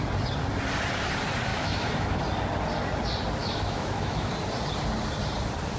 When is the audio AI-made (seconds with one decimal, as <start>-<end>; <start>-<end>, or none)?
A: 1.5-2.2; 3.4-4.3